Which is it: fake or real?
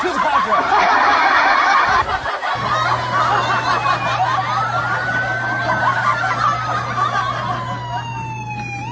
real